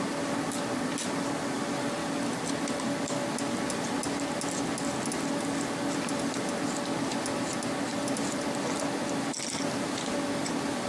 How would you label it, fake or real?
real